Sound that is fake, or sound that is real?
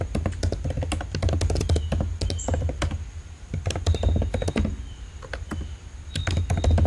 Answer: real